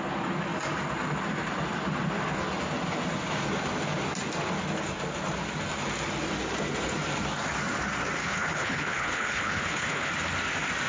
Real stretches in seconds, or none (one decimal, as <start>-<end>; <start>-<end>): 0.0-8.2; 10.1-10.9